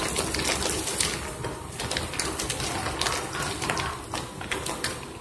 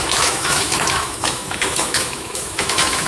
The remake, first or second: second